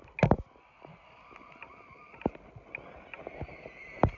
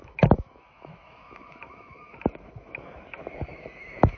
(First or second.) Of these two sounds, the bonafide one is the first